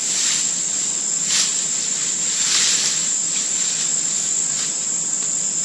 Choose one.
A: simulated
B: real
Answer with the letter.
B